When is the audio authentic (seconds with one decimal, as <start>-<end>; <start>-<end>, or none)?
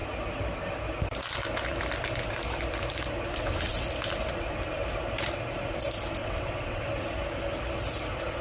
0.0-6.2; 6.8-8.4